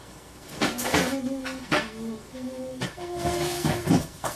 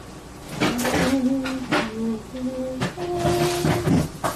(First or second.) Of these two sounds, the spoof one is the first